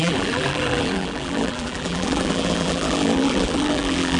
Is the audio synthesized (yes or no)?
yes